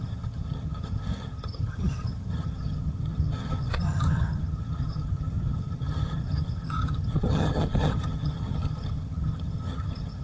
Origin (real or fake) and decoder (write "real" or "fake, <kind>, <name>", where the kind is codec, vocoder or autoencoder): fake, vocoder, HiFi-GAN